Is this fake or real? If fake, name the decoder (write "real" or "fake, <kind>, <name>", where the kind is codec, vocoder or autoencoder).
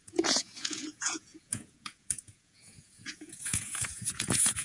fake, vocoder, Vocos